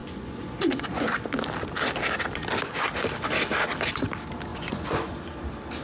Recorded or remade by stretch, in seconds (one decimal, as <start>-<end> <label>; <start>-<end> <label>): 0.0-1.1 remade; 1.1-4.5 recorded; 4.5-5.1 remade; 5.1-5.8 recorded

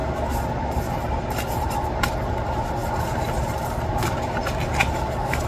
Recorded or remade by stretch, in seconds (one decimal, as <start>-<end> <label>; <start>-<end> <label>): 0.0-5.5 recorded

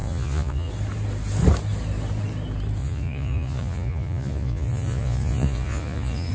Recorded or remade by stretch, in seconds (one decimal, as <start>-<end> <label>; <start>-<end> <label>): 0.0-0.7 remade; 0.7-2.8 recorded; 2.8-6.3 remade

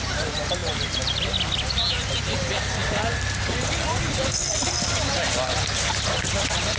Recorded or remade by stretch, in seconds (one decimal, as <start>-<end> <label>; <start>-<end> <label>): 0.0-6.8 recorded

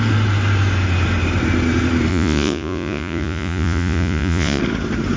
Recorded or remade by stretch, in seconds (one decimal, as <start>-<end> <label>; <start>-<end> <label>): 0.0-2.1 recorded; 2.1-4.6 remade; 4.6-5.2 recorded

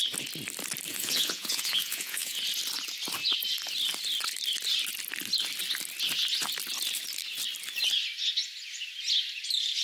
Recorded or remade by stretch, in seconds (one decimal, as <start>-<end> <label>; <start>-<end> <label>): 0.0-0.9 recorded; 0.9-2.4 remade; 2.4-9.8 recorded